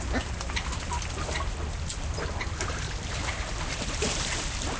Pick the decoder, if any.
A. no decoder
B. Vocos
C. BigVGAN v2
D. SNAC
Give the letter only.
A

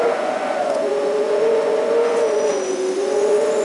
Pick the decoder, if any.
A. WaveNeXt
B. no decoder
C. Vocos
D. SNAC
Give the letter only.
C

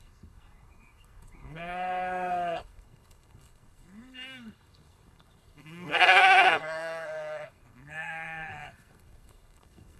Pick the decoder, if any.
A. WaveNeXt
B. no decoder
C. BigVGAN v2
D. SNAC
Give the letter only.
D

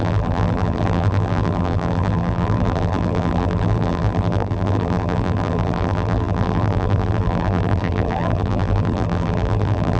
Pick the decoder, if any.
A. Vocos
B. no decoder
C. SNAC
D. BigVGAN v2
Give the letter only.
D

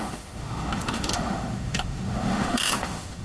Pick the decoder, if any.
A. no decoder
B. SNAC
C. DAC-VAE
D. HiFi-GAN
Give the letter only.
C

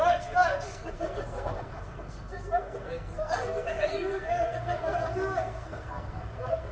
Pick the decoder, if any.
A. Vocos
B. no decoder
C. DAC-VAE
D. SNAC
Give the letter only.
D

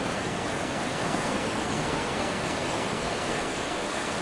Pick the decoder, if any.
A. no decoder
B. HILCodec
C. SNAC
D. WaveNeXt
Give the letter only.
C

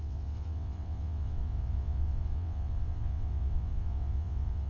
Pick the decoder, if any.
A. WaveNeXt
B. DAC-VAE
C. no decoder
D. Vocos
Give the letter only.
A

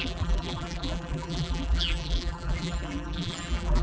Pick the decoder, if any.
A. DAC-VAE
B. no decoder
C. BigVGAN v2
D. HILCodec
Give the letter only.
C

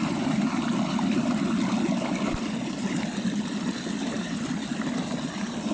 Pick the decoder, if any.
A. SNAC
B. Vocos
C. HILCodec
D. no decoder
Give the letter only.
D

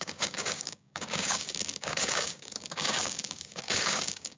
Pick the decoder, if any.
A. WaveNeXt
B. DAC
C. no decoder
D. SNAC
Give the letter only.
B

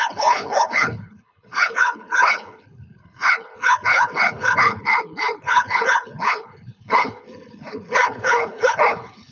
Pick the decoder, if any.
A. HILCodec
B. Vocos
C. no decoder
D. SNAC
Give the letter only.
A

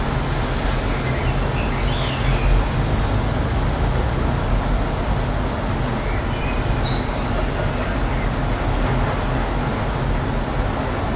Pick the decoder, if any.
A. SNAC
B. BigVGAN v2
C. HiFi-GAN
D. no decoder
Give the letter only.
D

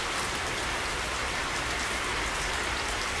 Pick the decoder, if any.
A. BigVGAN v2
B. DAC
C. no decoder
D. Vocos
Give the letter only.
C